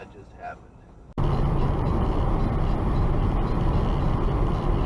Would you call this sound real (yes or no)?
yes